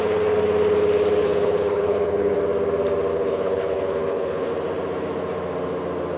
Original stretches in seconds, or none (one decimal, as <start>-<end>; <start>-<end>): 0.0-1.2; 2.4-3.1; 4.5-6.2